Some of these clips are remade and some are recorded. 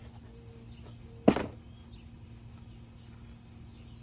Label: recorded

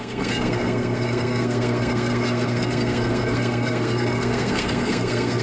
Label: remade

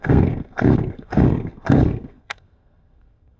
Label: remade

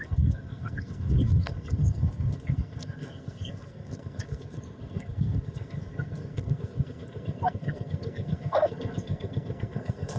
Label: remade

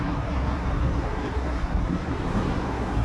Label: remade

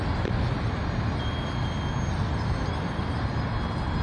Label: recorded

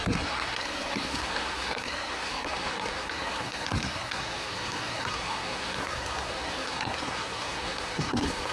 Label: remade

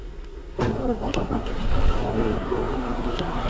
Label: remade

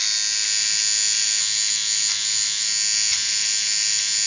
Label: recorded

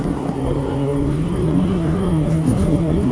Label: remade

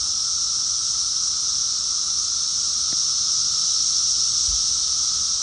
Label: recorded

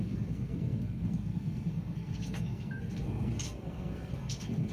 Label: remade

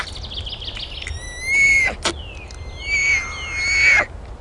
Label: recorded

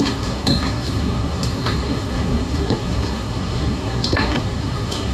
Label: remade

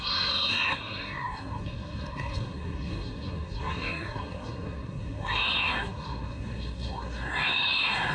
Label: remade